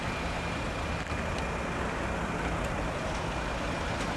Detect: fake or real real